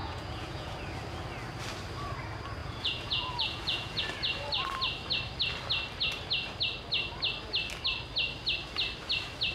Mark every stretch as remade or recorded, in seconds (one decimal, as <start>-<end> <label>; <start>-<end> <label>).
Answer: 0.0-0.8 remade; 0.8-2.6 recorded; 2.6-4.0 remade; 4.0-9.5 recorded